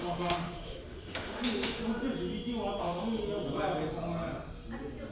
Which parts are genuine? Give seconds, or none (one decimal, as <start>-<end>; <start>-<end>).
1.8-2.8; 3.2-5.1

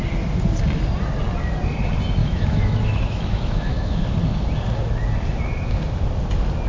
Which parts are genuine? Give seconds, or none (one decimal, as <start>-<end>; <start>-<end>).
0.0-2.2; 4.0-6.7

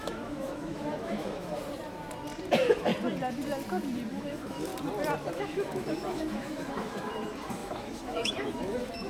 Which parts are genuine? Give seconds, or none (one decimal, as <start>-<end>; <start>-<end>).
1.6-2.5; 2.9-4.1; 4.7-5.3

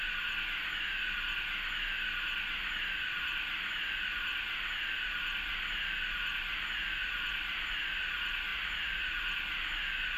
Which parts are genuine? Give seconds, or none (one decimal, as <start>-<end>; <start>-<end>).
0.0-10.2

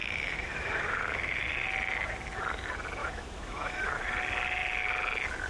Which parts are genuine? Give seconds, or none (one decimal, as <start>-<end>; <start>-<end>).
1.3-3.0; 3.9-5.5

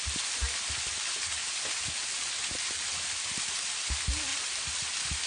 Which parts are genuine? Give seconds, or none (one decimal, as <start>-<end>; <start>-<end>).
0.0-5.3

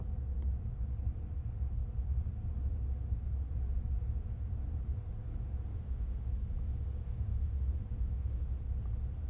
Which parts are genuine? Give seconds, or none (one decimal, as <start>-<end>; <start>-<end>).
0.0-5.7; 6.3-7.0; 8.6-9.3

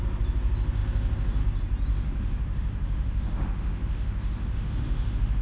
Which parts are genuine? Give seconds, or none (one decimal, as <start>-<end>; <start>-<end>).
0.0-1.9